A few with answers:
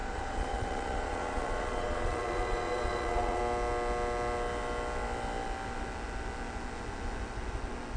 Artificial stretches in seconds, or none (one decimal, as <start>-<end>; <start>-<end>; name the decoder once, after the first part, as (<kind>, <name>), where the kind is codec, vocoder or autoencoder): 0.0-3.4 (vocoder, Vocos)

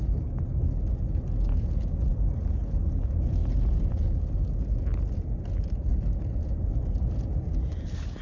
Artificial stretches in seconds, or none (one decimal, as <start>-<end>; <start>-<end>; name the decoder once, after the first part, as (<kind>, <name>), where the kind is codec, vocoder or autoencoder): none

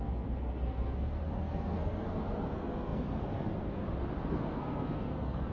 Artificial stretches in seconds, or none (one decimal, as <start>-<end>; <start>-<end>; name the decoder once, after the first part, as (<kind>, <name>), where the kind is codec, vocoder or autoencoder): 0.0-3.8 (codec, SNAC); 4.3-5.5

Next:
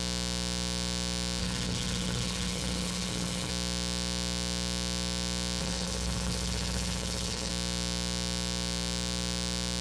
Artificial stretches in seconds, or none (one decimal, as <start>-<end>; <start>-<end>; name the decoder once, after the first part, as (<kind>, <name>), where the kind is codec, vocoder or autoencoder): 1.4-3.5 (codec, HILCodec); 5.6-7.5

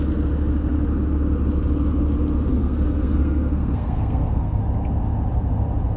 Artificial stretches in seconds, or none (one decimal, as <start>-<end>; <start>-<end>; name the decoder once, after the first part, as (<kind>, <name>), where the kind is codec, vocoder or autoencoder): 2.5-4.6 (codec, SNAC)

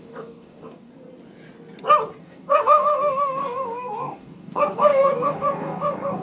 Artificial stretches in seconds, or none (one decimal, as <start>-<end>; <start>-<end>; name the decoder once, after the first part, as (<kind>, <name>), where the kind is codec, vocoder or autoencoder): 0.0-0.9 (codec, DAC); 2.2-6.2